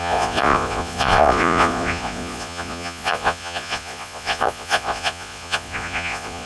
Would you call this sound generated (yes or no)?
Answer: yes